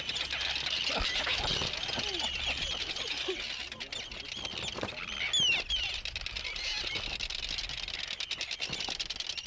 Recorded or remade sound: recorded